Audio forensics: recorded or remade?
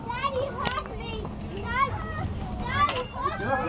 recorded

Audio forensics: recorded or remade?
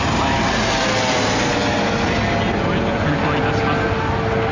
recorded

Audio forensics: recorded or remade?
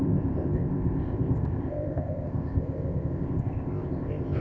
remade